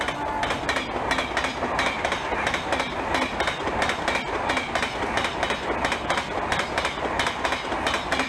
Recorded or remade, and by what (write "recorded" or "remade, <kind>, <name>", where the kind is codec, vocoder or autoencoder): recorded